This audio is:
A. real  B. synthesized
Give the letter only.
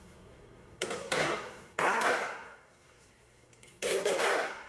B